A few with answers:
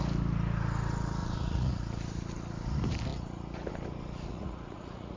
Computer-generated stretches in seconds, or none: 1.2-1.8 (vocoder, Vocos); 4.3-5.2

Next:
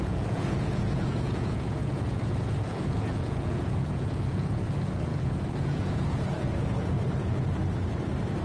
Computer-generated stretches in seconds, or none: 0.0-7.6 (vocoder, Vocos)

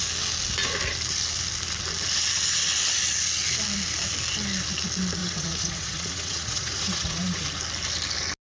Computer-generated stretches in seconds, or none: 5.2-7.4 (vocoder, Vocos)